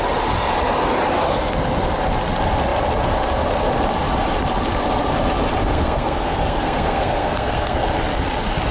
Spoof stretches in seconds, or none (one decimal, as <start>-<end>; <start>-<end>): 5.6-7.8